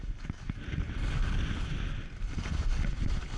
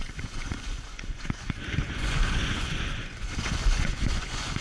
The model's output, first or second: second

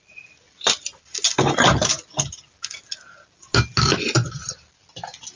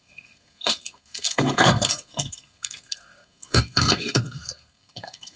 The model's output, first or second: second